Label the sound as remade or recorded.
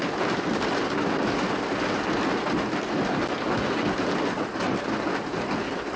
recorded